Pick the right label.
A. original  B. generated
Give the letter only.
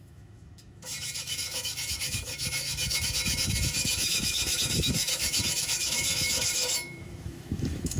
B